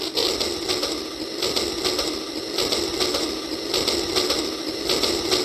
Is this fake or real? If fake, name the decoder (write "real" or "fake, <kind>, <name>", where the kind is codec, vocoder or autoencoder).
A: real